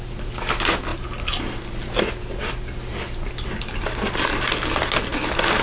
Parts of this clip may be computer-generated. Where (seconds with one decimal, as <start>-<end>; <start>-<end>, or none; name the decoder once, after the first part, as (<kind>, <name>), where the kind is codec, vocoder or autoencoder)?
none